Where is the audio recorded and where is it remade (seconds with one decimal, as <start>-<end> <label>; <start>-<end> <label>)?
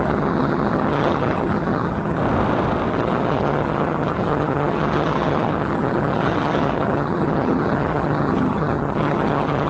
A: 0.0-2.2 remade; 2.2-2.9 recorded; 2.9-9.7 remade